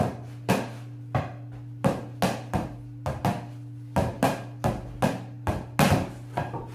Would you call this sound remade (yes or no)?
no